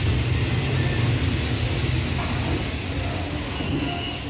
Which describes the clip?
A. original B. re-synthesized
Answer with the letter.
A